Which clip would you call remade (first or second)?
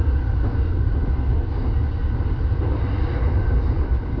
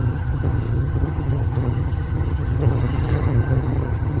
second